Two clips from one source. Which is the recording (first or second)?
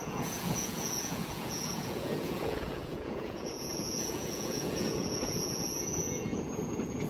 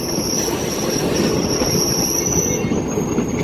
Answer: second